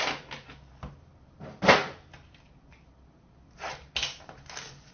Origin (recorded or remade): recorded